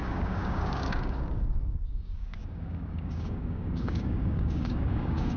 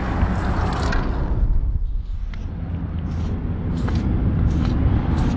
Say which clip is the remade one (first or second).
first